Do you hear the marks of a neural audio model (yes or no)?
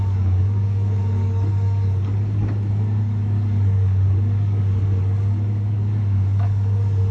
yes